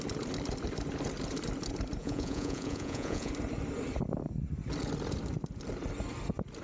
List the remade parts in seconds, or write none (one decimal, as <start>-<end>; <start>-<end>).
2.0-3.3